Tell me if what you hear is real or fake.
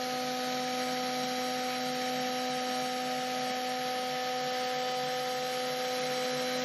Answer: real